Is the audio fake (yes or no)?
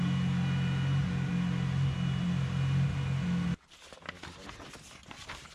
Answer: no